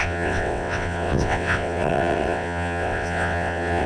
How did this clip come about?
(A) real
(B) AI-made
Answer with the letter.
B